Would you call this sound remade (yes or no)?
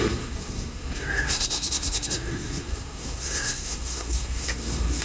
yes